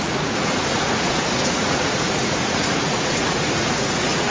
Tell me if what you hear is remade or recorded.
remade